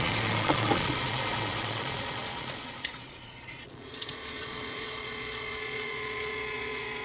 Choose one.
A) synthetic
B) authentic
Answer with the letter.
A